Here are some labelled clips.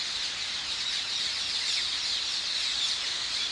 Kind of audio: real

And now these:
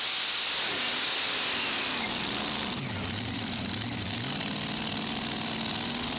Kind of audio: real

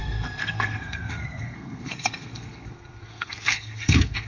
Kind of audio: fake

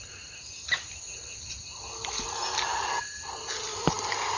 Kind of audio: real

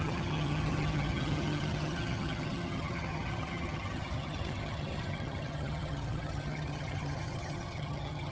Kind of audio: fake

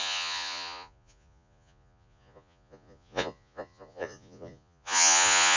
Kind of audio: fake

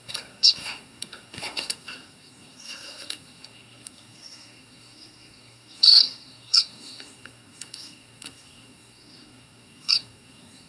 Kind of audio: fake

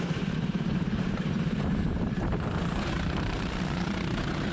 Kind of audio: fake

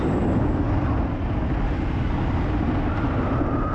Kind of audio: real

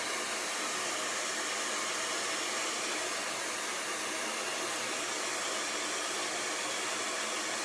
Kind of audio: real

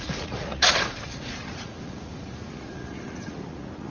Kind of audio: fake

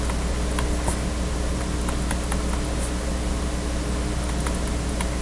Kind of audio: real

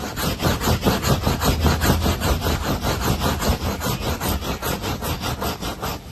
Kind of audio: real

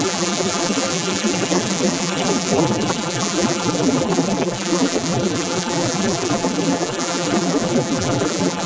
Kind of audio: fake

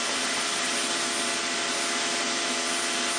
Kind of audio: real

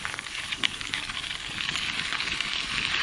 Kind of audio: fake